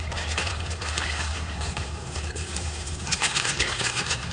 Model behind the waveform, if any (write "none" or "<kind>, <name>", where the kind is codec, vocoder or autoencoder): codec, SNAC